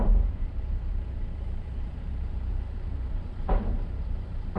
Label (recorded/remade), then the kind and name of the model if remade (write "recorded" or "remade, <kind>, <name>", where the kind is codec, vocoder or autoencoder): remade, vocoder, BigVGAN v2